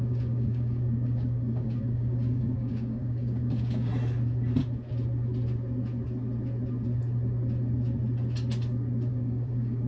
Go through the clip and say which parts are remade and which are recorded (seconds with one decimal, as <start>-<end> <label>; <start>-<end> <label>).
0.0-3.9 remade; 3.9-9.1 recorded; 9.1-9.9 remade